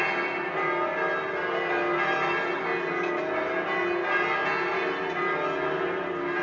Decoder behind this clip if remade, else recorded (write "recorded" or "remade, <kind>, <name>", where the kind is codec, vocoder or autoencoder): recorded